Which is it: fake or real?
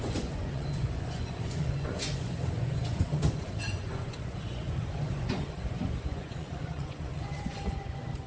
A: fake